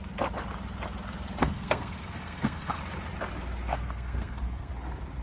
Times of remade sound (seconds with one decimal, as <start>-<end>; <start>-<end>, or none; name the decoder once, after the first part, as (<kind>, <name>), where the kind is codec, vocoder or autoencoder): 1.4-2.8 (codec, SNAC); 3.7-4.7